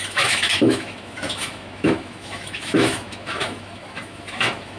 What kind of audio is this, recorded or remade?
remade